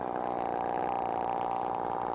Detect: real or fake real